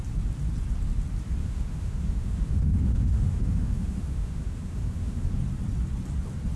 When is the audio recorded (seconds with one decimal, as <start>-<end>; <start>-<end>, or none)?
0.0-1.4; 5.4-6.6